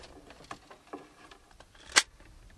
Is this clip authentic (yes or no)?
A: yes